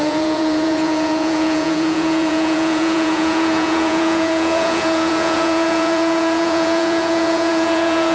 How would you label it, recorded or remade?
remade